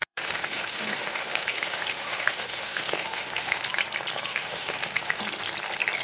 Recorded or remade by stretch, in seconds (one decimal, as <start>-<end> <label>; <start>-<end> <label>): 0.0-3.6 remade; 3.6-4.3 recorded; 4.3-5.2 remade; 5.2-6.0 recorded